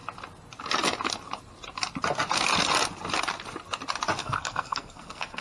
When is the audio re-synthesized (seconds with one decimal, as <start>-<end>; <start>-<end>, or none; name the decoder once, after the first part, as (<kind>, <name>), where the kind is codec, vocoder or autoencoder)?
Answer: 4.2-5.4 (codec, SNAC)